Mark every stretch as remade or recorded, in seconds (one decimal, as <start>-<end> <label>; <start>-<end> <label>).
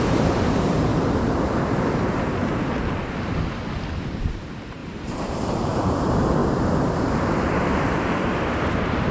0.0-0.9 remade; 0.9-1.7 recorded; 1.7-2.4 remade; 2.4-4.0 recorded; 4.0-6.4 remade; 6.4-7.5 recorded; 7.5-9.1 remade